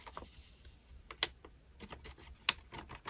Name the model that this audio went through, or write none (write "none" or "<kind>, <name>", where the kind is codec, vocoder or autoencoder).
none